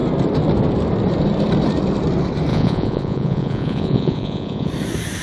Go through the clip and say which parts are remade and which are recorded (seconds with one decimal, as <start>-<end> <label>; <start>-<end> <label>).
0.0-2.5 recorded; 2.5-4.7 remade; 4.7-5.2 recorded